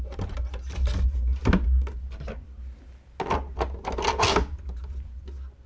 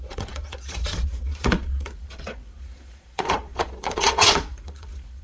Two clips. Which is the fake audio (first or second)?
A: second